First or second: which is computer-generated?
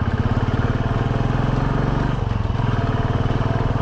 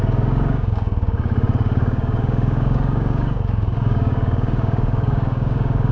second